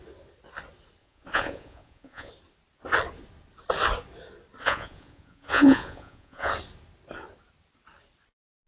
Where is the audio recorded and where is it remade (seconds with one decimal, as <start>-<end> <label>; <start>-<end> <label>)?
0.0-1.0 recorded; 1.0-2.3 remade; 2.3-4.6 recorded; 4.6-6.5 remade; 6.5-8.7 recorded